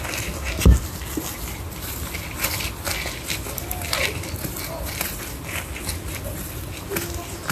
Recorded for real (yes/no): yes